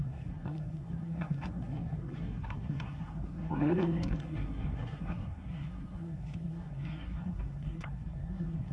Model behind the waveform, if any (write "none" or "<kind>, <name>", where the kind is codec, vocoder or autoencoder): codec, SNAC